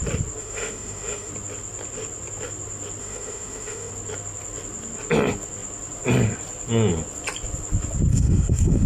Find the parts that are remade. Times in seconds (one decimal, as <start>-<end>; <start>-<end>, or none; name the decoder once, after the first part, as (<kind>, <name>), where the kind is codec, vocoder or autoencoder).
0.4-1.3 (autoencoder, DAC-VAE); 3.0-3.9; 8.1-8.9